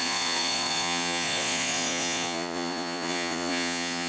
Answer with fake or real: fake